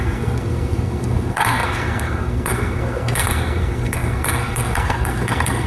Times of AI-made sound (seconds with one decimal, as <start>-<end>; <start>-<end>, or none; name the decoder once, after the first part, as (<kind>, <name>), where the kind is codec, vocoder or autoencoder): 0.0-5.7 (codec, SNAC)